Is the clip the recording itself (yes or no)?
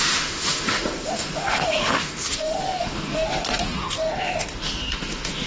no